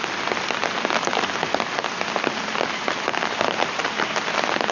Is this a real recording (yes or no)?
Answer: yes